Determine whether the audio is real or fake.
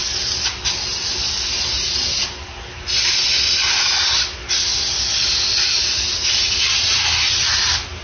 real